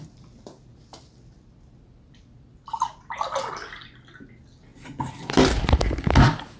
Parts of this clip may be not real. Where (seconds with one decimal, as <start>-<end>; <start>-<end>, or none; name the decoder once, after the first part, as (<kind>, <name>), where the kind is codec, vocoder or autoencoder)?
none